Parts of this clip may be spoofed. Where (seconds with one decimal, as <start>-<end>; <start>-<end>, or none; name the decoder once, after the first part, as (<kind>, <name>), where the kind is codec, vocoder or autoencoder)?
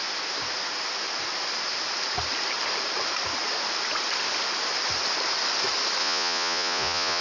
6.0-7.2 (vocoder, Vocos)